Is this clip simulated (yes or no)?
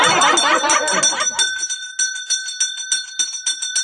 no